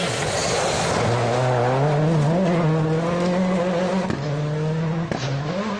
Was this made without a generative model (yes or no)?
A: yes